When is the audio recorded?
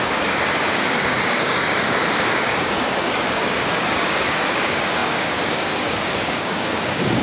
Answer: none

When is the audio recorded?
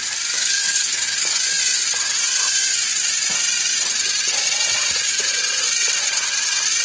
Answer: 0.0-0.4; 1.4-6.8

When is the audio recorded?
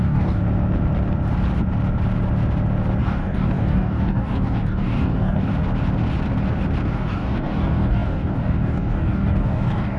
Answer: 0.4-3.0; 5.5-6.9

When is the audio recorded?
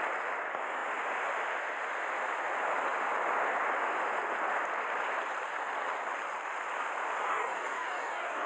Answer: 0.0-7.3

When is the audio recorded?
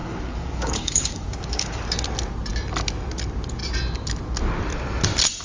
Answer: 1.8-5.4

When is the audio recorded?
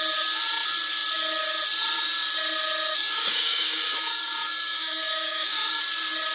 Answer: 0.0-2.9; 5.8-6.3